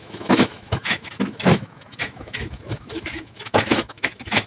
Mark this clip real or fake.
fake